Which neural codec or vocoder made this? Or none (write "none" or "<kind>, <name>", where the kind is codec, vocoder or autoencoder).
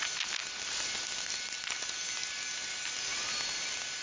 none